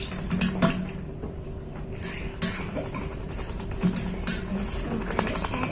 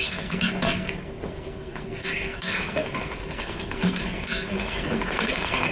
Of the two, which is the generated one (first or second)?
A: second